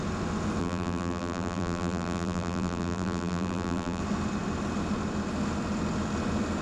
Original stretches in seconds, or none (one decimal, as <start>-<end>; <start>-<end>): 0.0-0.6; 4.0-6.6